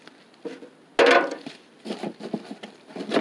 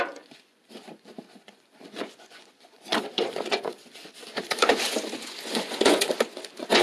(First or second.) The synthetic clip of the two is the second